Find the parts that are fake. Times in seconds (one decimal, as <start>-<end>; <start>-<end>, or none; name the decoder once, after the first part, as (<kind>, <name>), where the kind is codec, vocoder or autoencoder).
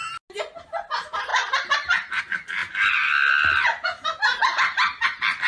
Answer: 1.3-2.2 (vocoder, BigVGAN v2); 4.4-5.5